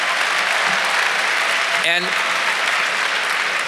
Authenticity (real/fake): real